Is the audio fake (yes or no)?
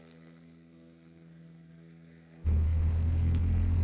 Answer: yes